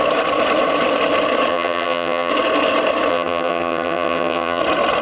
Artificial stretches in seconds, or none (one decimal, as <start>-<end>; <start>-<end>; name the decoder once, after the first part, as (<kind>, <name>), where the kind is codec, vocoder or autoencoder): 1.5-2.3 (vocoder, HiFi-GAN); 3.1-4.6